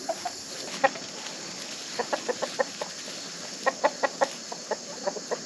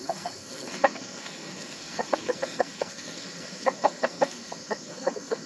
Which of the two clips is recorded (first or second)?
first